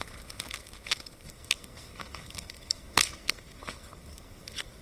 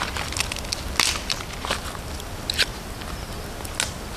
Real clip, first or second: second